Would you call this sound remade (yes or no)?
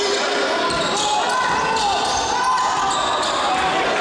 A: no